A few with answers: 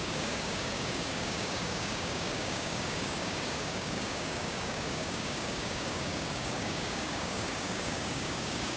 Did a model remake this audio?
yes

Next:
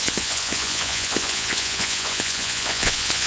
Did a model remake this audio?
yes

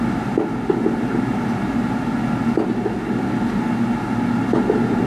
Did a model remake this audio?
no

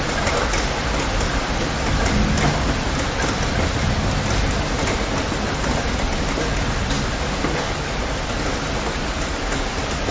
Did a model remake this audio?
no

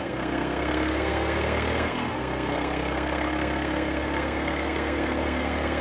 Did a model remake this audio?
yes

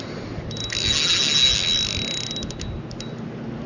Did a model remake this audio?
no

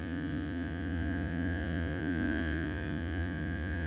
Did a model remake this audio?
yes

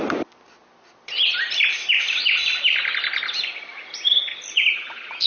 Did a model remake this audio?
no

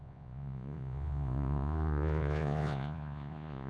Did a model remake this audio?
yes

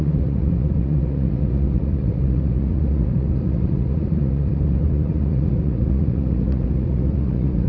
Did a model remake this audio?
yes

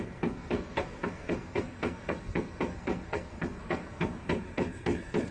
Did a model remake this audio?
yes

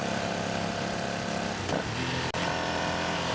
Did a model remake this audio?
no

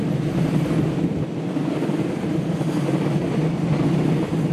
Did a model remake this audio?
no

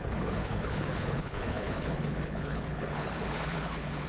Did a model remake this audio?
yes